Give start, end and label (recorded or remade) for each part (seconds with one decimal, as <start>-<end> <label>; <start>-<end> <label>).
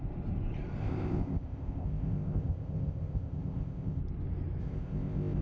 0.0-0.8 recorded; 0.8-4.0 remade; 4.0-4.6 recorded; 4.6-5.4 remade